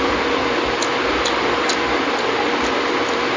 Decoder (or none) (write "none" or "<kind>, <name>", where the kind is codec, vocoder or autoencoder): none